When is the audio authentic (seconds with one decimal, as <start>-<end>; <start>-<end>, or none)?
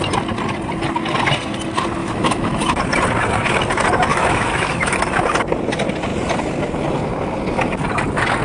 0.0-2.0; 2.8-4.1; 5.0-8.4